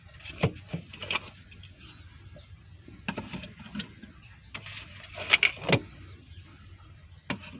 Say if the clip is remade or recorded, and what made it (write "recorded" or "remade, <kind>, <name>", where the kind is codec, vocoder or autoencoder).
recorded